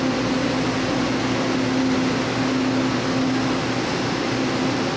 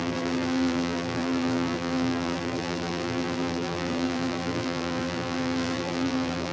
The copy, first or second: second